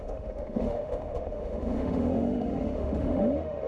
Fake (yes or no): yes